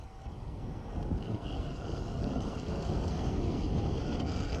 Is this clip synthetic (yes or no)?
yes